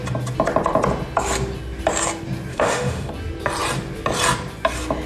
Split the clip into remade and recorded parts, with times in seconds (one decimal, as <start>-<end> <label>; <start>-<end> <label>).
0.0-2.5 recorded; 2.5-3.1 remade; 3.1-5.1 recorded